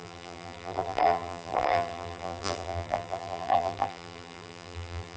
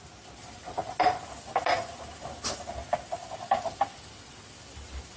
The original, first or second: second